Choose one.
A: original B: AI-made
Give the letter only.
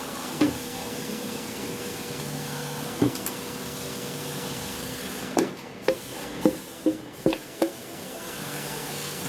B